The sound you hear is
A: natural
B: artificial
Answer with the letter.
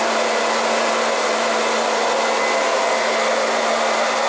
A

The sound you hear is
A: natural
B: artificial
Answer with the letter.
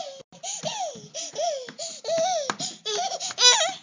A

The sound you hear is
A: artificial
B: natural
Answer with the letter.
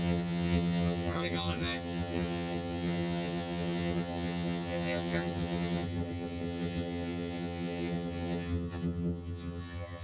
A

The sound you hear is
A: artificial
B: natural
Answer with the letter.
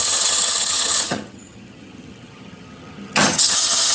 A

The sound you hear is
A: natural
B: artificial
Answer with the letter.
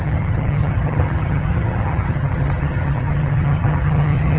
B